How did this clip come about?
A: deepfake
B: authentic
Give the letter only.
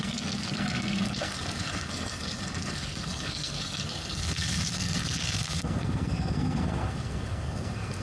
A